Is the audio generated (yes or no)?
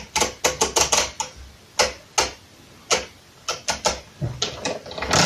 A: no